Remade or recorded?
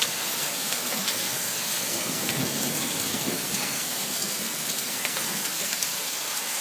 remade